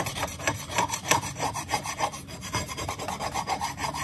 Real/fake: fake